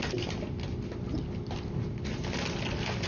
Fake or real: real